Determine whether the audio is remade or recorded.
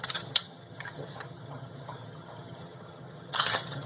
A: remade